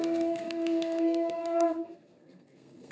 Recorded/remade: remade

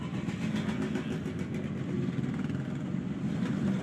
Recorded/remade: recorded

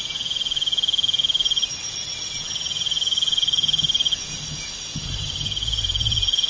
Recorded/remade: recorded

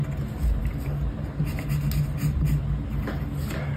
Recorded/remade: recorded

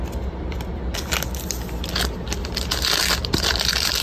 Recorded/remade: recorded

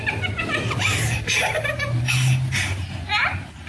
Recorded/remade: recorded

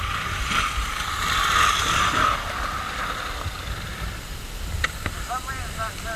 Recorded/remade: remade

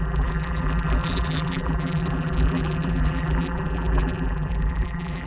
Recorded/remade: remade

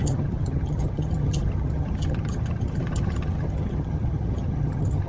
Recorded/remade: remade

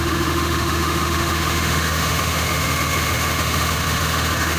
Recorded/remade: remade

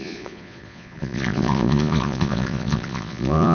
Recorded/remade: remade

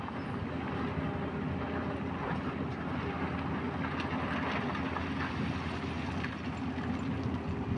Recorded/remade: recorded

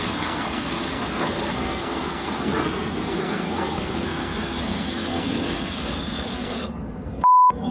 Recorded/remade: remade